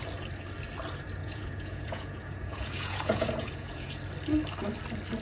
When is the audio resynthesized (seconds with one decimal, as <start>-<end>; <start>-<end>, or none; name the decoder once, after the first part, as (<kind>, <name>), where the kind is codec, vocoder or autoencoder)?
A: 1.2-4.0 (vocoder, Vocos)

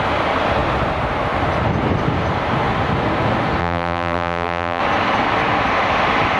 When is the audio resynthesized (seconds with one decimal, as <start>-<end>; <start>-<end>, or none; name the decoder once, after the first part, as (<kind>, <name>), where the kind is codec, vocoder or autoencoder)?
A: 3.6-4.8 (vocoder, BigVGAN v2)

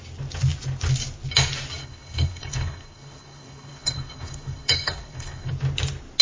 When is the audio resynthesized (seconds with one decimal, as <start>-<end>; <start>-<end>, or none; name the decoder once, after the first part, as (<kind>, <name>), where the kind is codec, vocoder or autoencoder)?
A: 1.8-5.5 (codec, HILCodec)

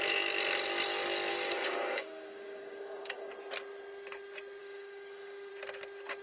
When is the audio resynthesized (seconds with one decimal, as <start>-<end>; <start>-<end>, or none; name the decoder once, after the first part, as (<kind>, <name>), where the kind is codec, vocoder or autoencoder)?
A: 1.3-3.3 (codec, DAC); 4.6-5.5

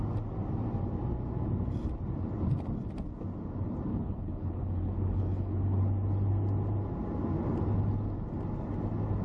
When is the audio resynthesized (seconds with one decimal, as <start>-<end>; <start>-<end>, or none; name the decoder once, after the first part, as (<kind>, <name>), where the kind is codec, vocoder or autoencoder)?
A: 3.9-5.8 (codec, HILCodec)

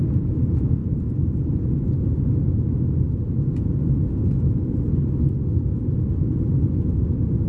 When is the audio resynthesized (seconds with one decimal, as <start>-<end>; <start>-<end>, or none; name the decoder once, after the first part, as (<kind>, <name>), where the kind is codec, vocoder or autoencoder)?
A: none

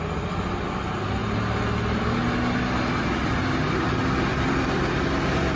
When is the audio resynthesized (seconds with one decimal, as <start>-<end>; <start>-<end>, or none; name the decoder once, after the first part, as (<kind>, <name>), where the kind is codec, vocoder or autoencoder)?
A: none